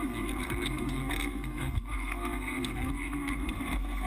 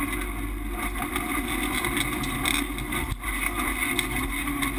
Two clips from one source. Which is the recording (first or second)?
second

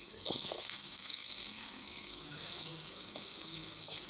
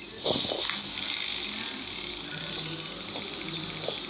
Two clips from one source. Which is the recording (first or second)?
second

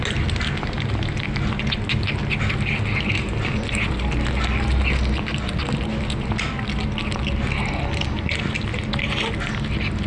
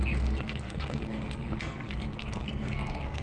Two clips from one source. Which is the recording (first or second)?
first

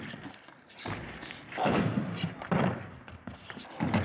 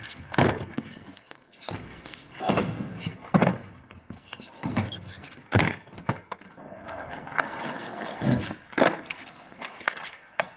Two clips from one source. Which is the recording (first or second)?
first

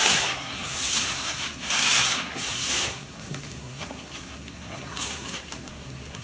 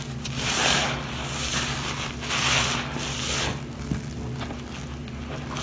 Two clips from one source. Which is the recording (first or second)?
second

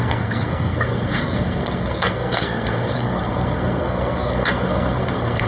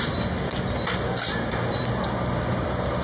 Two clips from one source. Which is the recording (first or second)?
second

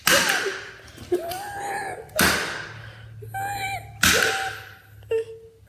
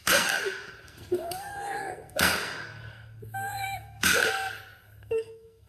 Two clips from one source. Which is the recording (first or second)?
first